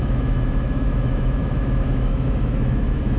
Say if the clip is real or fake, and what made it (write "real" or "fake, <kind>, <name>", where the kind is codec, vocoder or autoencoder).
fake, autoencoder, DAC-VAE